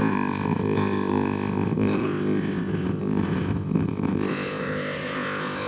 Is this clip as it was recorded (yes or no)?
no